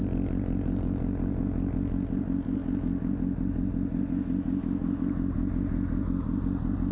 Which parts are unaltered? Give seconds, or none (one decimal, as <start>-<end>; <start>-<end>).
0.0-6.9